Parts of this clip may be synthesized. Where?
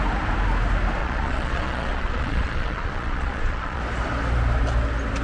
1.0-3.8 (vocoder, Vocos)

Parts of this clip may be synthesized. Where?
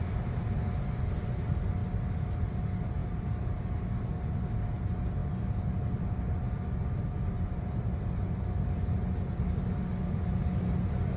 none